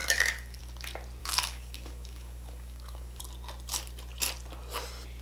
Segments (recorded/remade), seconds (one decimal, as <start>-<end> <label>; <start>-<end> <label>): 0.0-0.6 remade; 0.6-1.2 recorded; 1.2-3.2 remade; 3.2-5.2 recorded